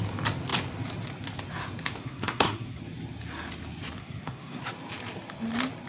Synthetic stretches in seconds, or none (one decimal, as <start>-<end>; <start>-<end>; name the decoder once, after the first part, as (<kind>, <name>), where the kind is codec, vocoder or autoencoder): 2.0-2.8 (codec, SNAC); 4.0-4.6